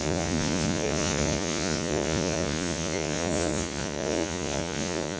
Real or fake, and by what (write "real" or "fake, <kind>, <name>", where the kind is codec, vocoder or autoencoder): fake, vocoder, Vocos